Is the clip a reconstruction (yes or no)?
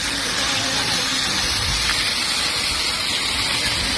no